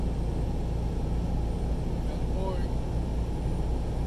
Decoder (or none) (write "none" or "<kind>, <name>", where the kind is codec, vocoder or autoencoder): none